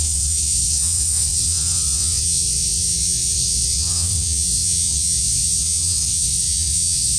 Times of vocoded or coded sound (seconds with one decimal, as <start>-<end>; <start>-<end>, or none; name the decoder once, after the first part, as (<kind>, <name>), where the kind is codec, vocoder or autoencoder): 0.0-7.2 (vocoder, WaveNeXt)